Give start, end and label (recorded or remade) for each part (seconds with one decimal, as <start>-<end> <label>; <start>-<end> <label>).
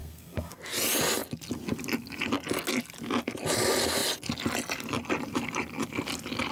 0.0-0.6 remade; 0.6-6.5 recorded